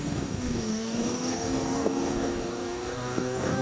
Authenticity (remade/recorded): remade